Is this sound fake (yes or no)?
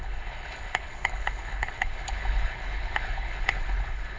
yes